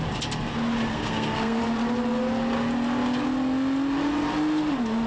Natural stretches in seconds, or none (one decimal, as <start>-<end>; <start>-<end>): 0.0-0.9; 1.6-5.1